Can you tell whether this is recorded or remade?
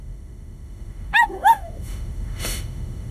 remade